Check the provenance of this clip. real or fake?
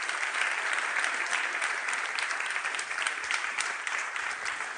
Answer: fake